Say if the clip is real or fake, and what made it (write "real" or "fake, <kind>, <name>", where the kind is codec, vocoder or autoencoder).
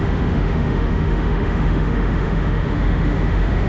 fake, autoencoder, DAC-VAE